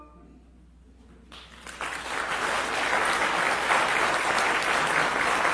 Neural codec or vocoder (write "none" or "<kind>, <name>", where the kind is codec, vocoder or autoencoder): none